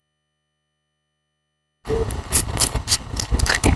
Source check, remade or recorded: remade